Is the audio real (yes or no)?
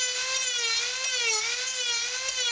yes